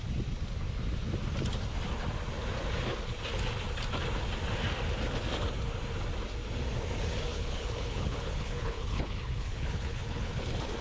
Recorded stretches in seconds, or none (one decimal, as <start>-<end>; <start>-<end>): 0.0-7.3; 10.3-10.8